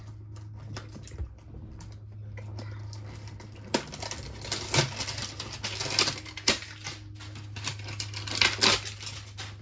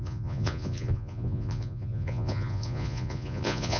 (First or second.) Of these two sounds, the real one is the first